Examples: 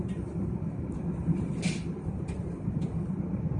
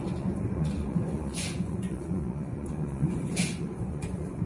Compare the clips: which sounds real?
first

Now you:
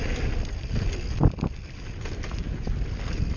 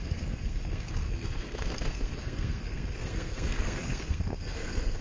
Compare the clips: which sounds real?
first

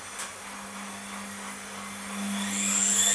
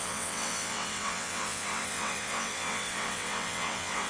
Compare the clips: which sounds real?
first